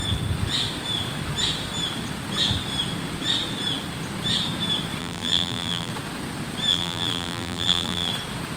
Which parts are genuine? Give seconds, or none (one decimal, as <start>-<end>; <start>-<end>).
0.0-5.0; 5.9-6.7; 8.1-8.6